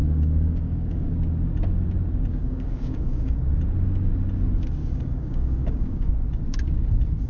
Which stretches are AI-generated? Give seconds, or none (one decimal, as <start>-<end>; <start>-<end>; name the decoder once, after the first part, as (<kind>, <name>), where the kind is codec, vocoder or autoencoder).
0.0-1.1 (codec, DAC); 2.3-3.4; 4.8-6.1